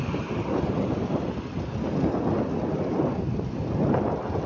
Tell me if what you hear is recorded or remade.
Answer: recorded